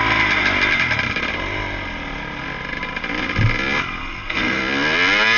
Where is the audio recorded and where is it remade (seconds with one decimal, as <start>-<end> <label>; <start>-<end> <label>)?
0.0-4.0 recorded; 4.0-4.6 remade; 4.6-5.4 recorded